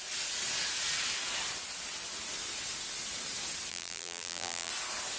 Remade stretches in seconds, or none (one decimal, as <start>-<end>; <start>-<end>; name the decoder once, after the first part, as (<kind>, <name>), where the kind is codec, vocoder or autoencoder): 3.7-4.7 (vocoder, BigVGAN v2)